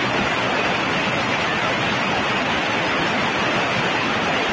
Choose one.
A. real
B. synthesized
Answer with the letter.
A